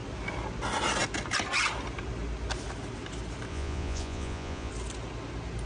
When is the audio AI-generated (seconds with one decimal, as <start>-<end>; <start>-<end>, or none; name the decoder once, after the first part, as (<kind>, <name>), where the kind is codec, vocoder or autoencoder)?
3.5-4.7 (vocoder, Vocos)

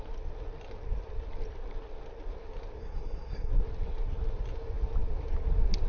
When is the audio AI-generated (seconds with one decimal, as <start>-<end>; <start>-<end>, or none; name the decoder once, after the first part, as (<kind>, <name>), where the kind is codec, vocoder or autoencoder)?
2.8-3.5 (codec, SNAC)

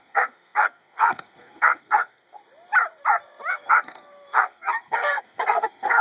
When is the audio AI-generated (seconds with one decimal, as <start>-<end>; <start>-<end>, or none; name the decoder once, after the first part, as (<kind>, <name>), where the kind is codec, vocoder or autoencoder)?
0.0-2.4 (codec, SNAC); 3.5-6.0

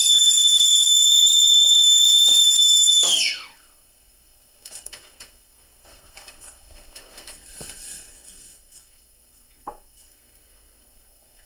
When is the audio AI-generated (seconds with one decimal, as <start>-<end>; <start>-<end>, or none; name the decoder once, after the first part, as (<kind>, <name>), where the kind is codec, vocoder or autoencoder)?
0.0-11.5 (codec, SNAC)

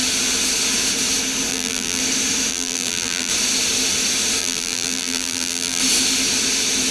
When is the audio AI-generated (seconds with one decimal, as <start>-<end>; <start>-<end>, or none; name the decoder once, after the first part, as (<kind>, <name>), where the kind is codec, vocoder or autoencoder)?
1.5-2.0 (vocoder, BigVGAN v2); 2.5-3.3; 4.4-5.8

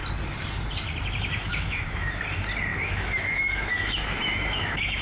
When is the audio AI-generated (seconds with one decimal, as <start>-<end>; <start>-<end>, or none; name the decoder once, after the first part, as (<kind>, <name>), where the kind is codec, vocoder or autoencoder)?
1.5-2.2 (autoencoder, DAC-VAE); 2.7-5.0